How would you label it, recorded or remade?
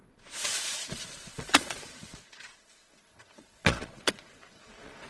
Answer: remade